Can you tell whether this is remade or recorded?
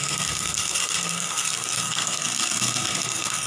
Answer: remade